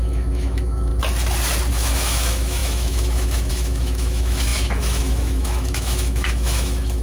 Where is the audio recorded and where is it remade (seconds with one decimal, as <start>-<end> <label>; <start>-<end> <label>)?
0.0-0.9 remade; 0.9-1.7 recorded; 1.7-7.0 remade